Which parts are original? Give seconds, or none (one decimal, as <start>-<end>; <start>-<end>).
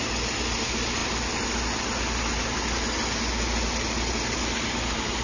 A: 0.0-5.2